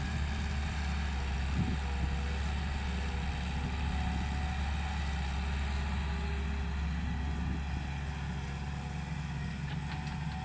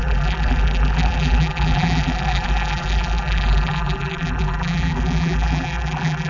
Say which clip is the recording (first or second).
first